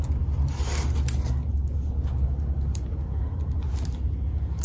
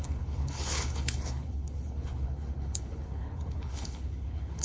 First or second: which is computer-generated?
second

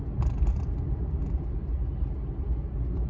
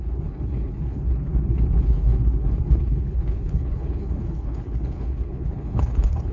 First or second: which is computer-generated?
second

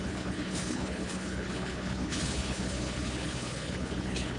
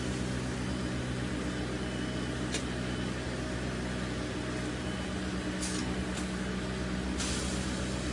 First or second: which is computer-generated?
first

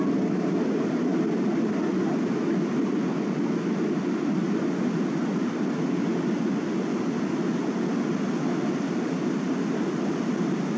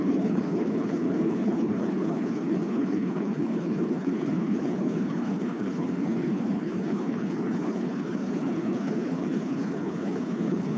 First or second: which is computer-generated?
second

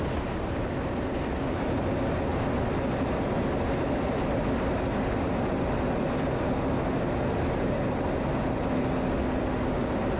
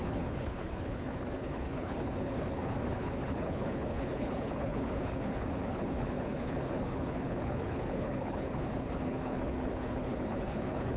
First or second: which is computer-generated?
second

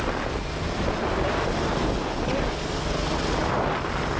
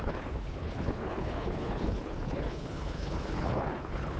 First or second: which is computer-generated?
second